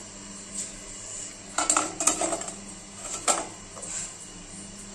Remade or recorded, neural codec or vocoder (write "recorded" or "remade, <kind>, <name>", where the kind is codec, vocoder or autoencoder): recorded